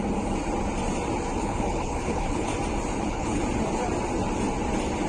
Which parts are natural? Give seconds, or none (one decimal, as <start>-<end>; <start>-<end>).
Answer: 0.0-1.4; 2.5-3.0; 3.4-5.1